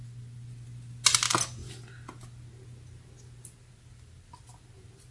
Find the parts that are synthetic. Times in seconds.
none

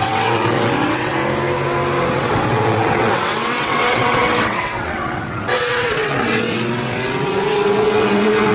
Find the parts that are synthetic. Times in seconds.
0.0-1.1 (vocoder, WaveNeXt); 2.1-8.5

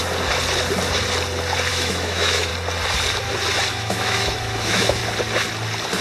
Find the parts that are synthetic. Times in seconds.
1.7-2.5 (autoencoder, DAC-VAE); 3.7-5.0

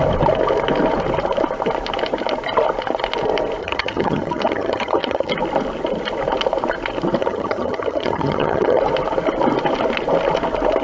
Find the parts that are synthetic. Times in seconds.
3.6-5.3 (vocoder, HiFi-GAN); 7.2-8.8

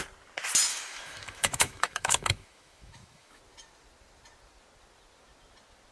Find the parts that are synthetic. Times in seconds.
0.7-3.4 (autoencoder, DAC-VAE)

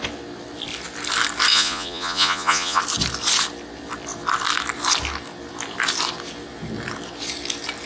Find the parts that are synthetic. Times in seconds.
1.5-2.8 (vocoder, Vocos)